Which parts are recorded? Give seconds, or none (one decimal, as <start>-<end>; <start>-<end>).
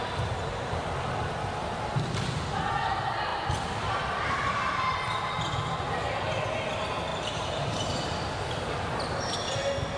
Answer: 0.0-1.6; 2.4-7.1; 9.1-10.0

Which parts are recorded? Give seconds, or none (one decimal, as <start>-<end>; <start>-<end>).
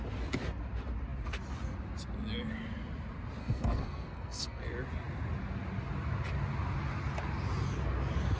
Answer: 0.0-3.4; 4.6-8.4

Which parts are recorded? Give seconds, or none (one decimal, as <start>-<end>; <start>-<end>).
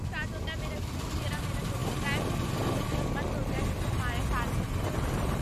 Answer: 0.0-5.4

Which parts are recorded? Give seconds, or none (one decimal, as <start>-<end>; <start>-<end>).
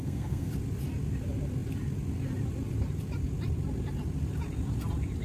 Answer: 0.5-5.2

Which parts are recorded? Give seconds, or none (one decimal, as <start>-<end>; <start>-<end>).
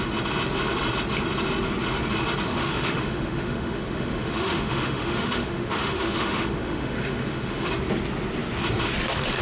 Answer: 0.0-2.5; 7.7-9.4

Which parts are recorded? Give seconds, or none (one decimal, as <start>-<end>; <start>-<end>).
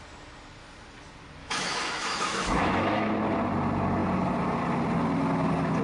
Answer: 0.0-1.4; 3.1-5.8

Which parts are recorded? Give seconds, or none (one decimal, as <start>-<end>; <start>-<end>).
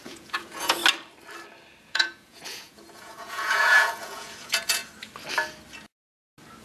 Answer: 0.8-1.8; 4.8-6.6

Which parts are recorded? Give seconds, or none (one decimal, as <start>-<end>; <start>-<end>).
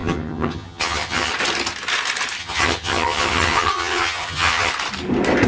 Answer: 1.3-2.4; 4.7-5.5